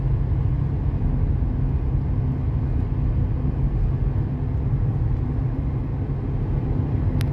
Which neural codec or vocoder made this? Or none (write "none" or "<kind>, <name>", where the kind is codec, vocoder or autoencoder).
none